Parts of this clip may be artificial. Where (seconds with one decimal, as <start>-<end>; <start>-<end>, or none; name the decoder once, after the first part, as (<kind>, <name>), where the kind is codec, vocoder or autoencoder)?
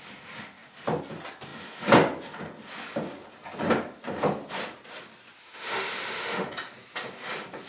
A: 5.4-6.5 (autoencoder, DAC-VAE)